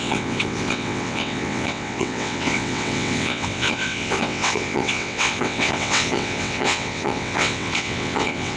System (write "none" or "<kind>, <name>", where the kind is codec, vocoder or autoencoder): vocoder, WaveNeXt